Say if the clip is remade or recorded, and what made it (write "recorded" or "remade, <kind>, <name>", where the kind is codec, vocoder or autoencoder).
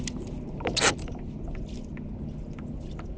recorded